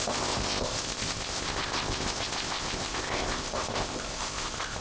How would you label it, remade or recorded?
remade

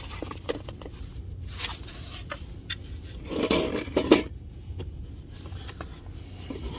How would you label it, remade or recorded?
recorded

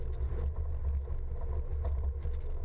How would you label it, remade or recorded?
recorded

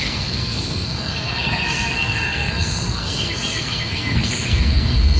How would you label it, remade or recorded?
remade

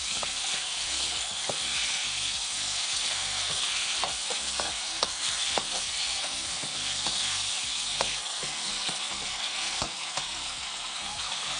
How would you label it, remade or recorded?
remade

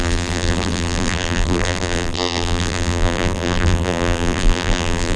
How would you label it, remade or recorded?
remade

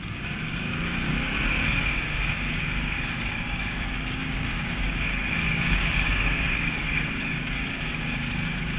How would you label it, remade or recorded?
remade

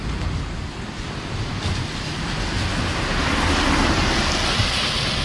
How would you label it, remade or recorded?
recorded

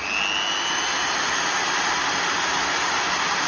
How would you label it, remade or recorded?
recorded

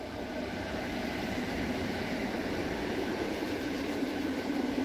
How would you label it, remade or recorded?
remade